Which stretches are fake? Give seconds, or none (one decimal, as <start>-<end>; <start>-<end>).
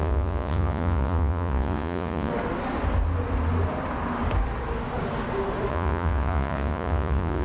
0.0-2.3; 5.7-7.4